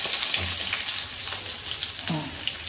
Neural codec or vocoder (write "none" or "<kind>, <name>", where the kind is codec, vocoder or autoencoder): none